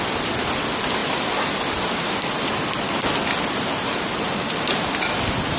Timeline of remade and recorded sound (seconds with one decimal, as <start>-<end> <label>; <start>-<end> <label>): 0.0-3.7 recorded; 3.7-4.8 remade; 4.8-5.6 recorded